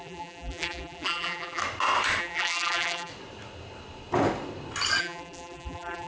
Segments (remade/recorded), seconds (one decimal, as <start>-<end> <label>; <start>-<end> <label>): 0.0-1.6 remade; 1.6-2.2 recorded; 2.2-3.1 remade; 3.1-5.0 recorded; 5.0-6.1 remade